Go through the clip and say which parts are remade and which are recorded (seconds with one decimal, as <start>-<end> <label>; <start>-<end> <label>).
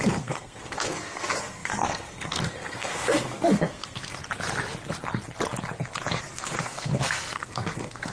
0.0-4.2 remade; 4.2-6.2 recorded; 6.2-8.1 remade